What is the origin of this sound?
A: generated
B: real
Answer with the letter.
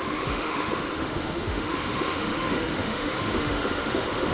A